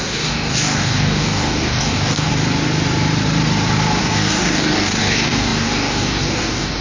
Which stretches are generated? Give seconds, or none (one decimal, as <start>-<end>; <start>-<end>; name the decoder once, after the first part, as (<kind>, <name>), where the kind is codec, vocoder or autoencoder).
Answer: 0.0-2.3 (codec, DAC); 4.0-6.8